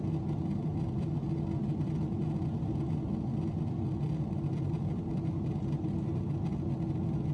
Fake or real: real